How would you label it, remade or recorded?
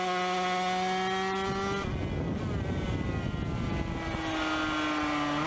recorded